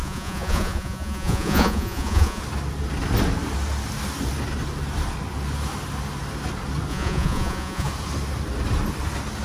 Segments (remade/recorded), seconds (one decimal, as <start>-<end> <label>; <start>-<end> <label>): 0.0-2.4 remade; 2.4-6.9 recorded; 6.9-7.9 remade; 7.9-9.4 recorded